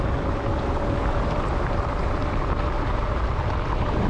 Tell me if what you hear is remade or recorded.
remade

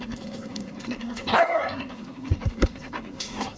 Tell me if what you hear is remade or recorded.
remade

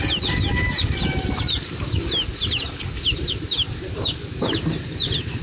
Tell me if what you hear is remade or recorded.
recorded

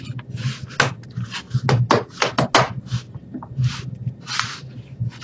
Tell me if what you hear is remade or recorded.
recorded